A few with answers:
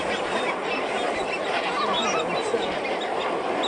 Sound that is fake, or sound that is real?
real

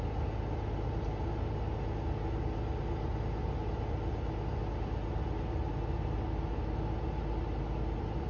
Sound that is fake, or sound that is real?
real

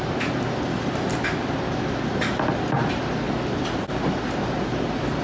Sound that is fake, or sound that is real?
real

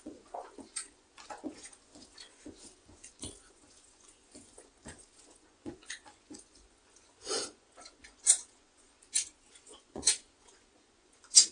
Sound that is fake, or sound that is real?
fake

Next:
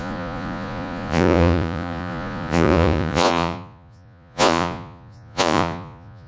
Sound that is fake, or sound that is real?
fake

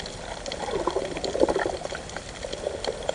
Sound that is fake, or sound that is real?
real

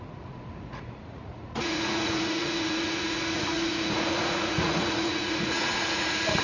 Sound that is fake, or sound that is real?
fake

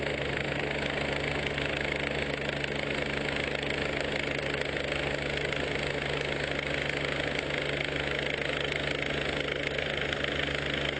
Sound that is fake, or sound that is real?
real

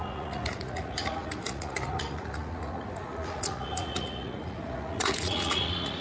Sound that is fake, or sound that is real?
fake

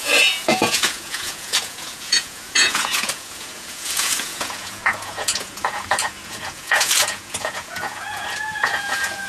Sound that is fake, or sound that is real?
fake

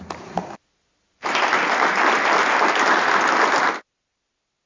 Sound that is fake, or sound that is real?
real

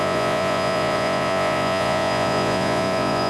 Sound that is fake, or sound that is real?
fake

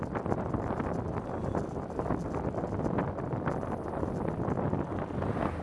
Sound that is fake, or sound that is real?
real